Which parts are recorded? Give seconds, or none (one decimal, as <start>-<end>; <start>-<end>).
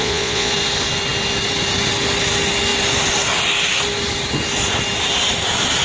0.5-5.8